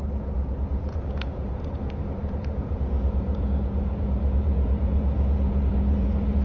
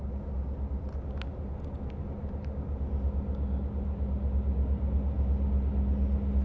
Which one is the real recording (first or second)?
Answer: second